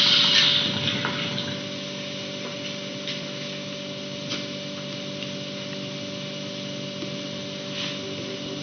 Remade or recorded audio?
recorded